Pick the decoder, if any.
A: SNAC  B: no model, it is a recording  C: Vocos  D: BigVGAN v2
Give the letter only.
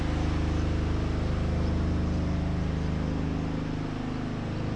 B